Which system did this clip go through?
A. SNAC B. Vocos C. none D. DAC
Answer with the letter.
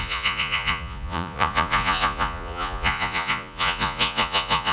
B